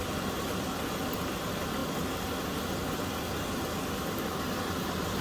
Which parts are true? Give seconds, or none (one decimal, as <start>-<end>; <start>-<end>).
0.0-5.2